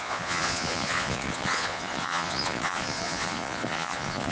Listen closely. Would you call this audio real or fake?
fake